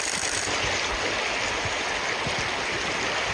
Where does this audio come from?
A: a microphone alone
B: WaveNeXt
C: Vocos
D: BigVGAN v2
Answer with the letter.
A